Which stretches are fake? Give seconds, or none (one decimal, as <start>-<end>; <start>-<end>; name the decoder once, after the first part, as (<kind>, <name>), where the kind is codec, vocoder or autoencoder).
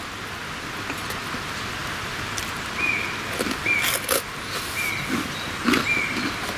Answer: none